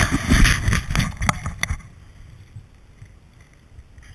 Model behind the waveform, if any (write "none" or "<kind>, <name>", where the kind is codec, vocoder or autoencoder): none